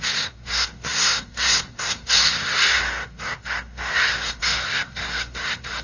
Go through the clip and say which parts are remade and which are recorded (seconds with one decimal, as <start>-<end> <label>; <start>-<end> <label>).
0.0-5.8 remade